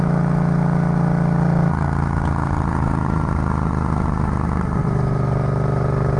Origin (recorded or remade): recorded